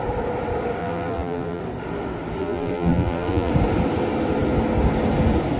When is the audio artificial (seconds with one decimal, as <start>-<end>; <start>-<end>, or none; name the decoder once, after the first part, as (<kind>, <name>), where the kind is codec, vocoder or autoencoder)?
0.8-1.6 (vocoder, BigVGAN v2); 2.4-3.5